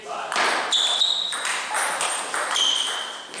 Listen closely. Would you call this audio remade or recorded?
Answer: recorded